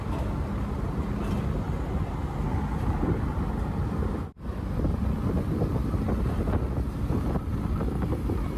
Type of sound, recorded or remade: recorded